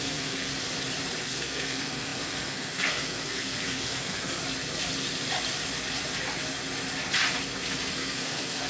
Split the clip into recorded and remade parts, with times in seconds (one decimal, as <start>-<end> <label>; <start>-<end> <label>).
0.0-0.5 remade; 0.5-1.2 recorded; 1.2-4.4 remade; 4.4-7.9 recorded; 7.9-8.7 remade